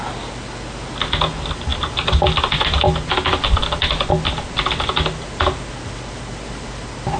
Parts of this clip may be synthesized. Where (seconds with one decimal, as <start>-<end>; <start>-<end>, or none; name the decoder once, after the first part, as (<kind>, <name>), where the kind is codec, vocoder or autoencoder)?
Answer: none